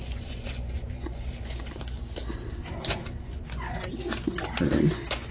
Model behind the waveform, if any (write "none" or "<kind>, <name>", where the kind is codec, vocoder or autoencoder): vocoder, Vocos